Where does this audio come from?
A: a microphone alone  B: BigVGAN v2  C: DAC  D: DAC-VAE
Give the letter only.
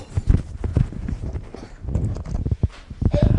B